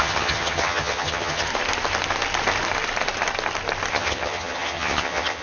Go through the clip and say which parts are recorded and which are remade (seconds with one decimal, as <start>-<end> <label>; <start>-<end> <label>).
0.0-1.5 remade; 1.5-3.9 recorded; 3.9-5.4 remade